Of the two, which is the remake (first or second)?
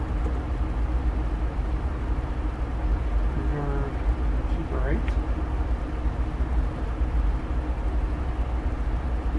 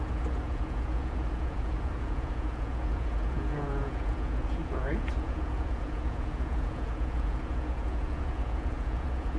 second